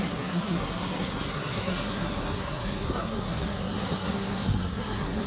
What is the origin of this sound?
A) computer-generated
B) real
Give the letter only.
A